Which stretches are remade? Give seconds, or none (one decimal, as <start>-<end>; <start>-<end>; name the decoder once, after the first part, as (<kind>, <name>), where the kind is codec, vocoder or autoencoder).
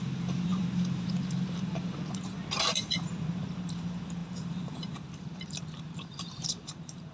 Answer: 0.0-7.1 (vocoder, BigVGAN v2)